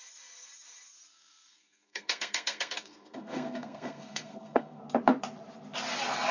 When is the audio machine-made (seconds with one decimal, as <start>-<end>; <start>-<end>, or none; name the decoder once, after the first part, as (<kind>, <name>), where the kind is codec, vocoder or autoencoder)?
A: 1.1-4.8 (codec, SNAC)